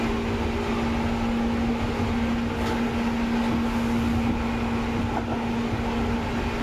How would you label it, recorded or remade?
recorded